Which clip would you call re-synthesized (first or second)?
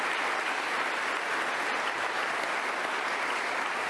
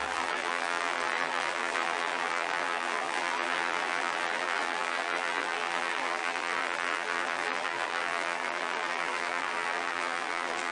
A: second